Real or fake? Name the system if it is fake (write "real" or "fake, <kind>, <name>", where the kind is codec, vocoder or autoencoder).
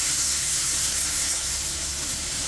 fake, codec, SNAC